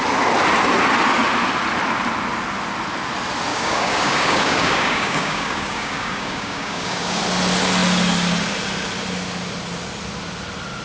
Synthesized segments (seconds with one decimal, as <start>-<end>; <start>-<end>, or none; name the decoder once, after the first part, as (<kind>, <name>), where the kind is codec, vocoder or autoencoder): 3.5-7.2 (codec, DAC)